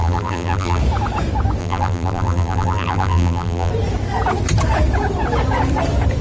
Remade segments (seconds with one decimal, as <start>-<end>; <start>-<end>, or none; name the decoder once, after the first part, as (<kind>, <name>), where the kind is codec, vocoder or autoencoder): 0.0-0.8 (vocoder, BigVGAN v2); 1.6-3.7